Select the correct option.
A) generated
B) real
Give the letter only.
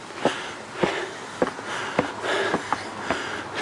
B